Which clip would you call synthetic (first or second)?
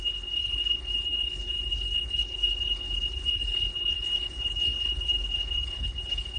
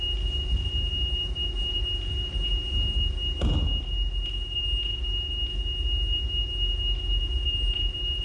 first